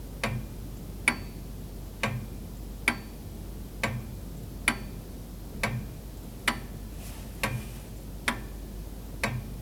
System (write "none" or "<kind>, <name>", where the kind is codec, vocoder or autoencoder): none